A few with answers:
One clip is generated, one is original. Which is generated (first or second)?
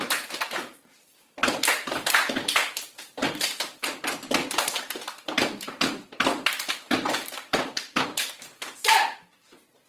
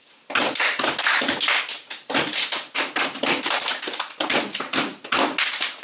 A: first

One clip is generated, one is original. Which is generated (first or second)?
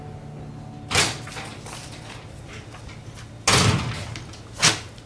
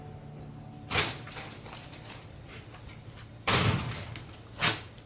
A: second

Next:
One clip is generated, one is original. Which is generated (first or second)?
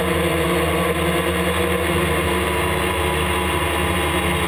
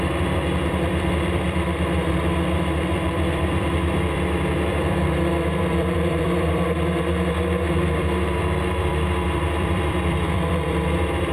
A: second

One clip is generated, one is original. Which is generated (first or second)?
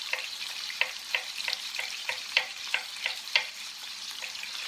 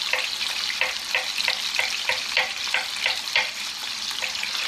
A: first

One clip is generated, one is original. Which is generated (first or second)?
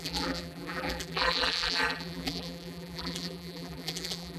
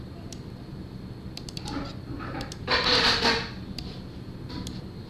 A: first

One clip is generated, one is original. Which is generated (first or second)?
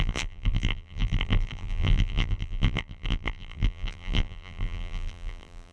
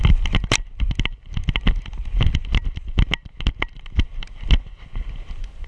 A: first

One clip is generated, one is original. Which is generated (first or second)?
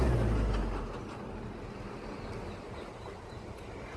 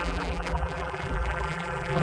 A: second